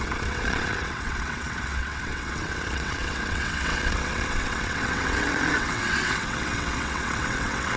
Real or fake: fake